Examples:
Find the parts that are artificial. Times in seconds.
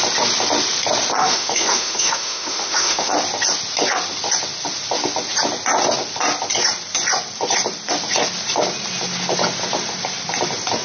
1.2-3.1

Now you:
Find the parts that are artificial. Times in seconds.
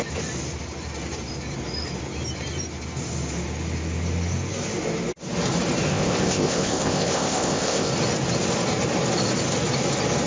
5.9-7.9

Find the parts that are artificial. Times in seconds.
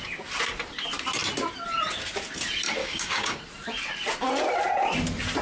2.8-3.4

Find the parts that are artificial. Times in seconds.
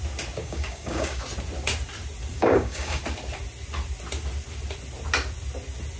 0.4-1.2; 2.3-3.0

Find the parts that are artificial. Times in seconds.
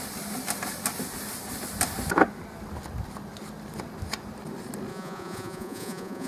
4.9-6.3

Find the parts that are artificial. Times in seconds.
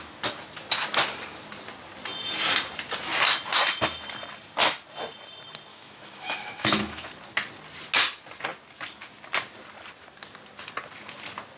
5.7-7.1